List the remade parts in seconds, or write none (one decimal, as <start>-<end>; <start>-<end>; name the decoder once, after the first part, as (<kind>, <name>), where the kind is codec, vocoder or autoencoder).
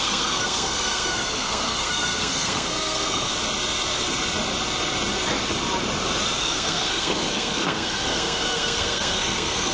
0.0-3.3 (codec, SNAC); 6.4-9.7